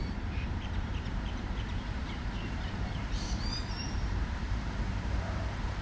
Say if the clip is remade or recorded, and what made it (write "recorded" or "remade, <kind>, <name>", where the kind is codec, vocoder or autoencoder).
remade, vocoder, BigVGAN v2